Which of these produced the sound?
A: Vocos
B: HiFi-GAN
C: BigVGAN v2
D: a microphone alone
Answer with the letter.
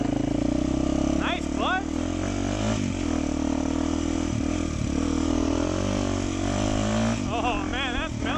D